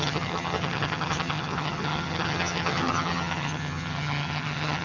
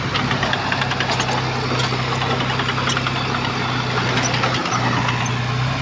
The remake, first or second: first